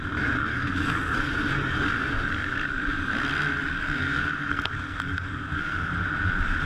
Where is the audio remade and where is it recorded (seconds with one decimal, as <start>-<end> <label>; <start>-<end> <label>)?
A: 0.0-0.5 recorded; 0.5-1.3 remade; 1.3-3.8 recorded; 3.8-5.9 remade; 5.9-6.7 recorded